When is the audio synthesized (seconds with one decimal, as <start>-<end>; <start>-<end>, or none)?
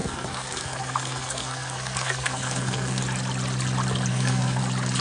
0.0-3.0; 4.1-4.6